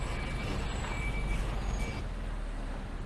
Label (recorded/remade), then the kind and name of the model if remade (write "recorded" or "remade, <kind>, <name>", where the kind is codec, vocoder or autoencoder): recorded